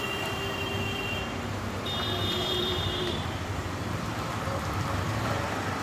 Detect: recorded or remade remade